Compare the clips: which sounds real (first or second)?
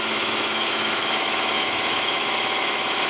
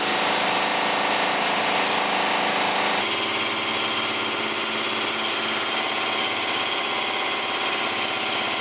second